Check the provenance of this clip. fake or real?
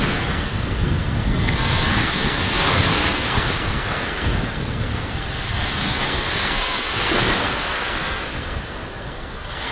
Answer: fake